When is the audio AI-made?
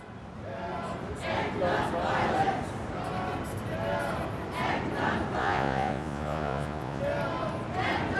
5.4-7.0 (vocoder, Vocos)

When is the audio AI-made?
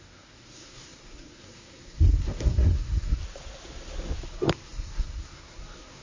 0.0-3.2 (codec, SNAC); 4.3-6.0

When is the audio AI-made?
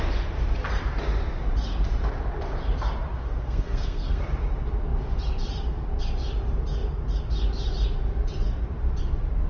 3.1-4.2 (codec, SNAC)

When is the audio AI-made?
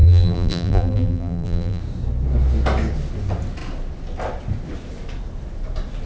0.0-1.8 (vocoder, BigVGAN v2)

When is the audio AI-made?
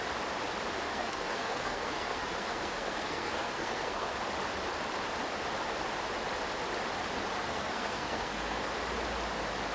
0.9-4.2 (codec, SNAC); 7.4-8.6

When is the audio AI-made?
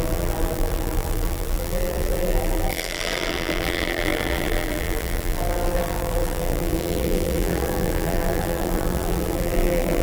0.0-10.0 (vocoder, BigVGAN v2)